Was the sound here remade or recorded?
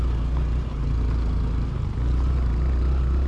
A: recorded